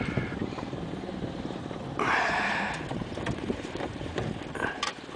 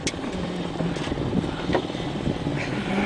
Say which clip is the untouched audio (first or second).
second